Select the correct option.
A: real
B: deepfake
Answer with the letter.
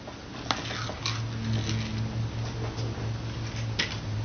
A